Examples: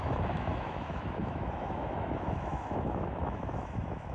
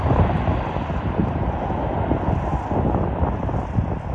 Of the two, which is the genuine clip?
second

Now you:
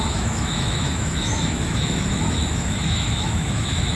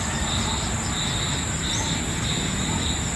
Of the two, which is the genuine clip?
second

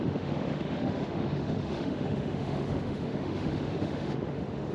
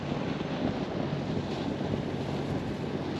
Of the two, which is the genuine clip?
second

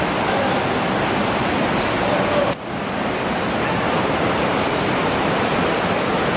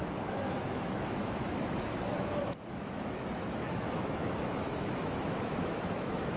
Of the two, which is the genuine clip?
first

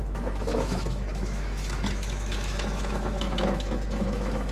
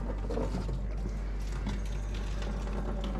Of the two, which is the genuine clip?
second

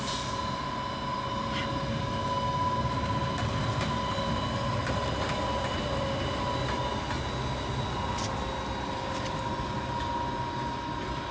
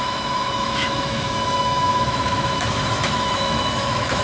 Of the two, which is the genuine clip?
first